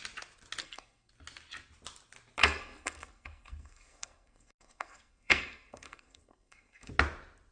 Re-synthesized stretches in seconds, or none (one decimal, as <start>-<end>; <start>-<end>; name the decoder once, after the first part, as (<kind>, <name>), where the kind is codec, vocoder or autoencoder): 0.6-1.1 (codec, SNAC); 2.4-6.9